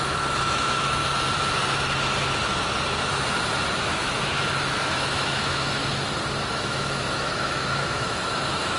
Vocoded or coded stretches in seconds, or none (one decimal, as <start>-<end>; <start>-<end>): 0.0-1.0; 3.8-5.8; 6.5-8.8